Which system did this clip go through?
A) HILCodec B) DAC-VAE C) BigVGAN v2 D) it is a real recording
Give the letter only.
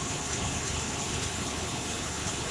A